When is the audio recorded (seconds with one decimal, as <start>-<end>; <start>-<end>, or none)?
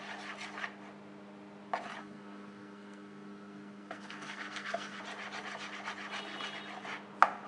0.0-2.0; 5.0-7.5